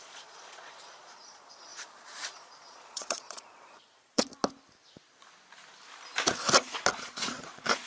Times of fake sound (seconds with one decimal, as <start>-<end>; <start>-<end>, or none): 0.0-4.3; 6.9-7.9